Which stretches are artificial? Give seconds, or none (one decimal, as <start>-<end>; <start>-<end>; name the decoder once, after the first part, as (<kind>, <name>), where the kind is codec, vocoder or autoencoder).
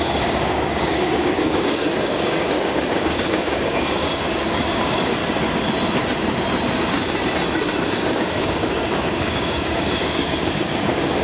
0.0-5.2 (codec, DAC); 7.9-11.2